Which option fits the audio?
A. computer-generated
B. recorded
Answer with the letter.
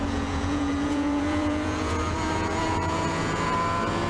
A